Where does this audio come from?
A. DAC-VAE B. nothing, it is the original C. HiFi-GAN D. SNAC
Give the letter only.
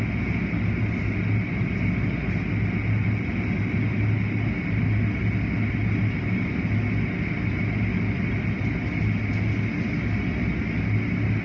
B